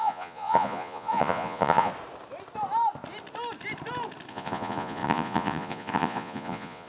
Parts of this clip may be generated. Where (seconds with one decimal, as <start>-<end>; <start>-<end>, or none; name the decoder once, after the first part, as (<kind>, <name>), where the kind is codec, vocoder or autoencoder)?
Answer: 0.0-1.9 (vocoder, Vocos); 4.3-6.9